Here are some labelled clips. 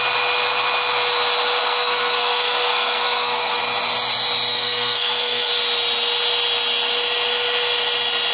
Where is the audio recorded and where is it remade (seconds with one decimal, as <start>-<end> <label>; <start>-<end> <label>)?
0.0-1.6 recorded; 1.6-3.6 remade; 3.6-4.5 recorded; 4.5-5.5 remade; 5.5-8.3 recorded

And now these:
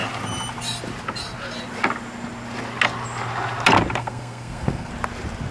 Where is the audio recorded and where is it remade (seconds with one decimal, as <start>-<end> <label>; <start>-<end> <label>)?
0.0-4.0 recorded; 4.0-4.9 remade; 4.9-5.5 recorded

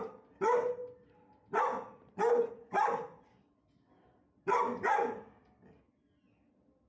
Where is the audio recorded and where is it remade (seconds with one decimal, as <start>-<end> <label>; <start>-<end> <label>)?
0.0-6.9 recorded

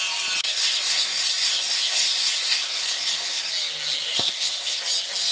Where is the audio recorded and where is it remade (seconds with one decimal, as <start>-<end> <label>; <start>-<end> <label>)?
0.0-0.4 recorded; 0.4-3.5 remade; 3.5-4.1 recorded; 4.1-4.8 remade; 4.8-5.3 recorded

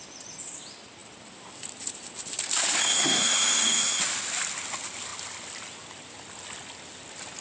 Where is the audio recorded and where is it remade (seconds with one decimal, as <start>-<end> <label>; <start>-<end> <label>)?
0.0-2.8 recorded; 2.8-4.0 remade; 4.0-7.4 recorded

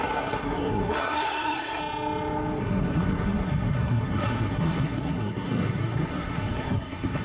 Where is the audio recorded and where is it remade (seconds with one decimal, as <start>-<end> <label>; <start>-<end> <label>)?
0.0-1.8 remade; 1.8-2.6 recorded; 2.6-7.2 remade

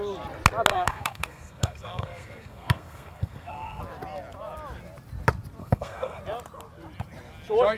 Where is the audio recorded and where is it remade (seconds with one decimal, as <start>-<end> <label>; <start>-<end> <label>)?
0.0-0.7 recorded; 0.7-3.8 remade; 3.8-5.6 recorded; 5.6-6.2 remade; 6.2-7.8 recorded